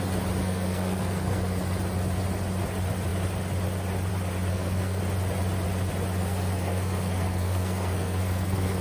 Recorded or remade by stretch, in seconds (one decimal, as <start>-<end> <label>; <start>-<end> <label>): 0.0-0.4 recorded; 0.4-1.6 remade; 1.6-4.5 recorded; 4.5-5.0 remade; 5.0-6.2 recorded; 6.2-8.8 remade